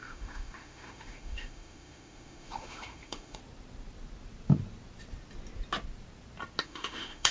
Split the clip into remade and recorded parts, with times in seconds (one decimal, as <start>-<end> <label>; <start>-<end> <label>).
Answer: 0.0-3.4 remade; 3.4-6.6 recorded; 6.6-7.3 remade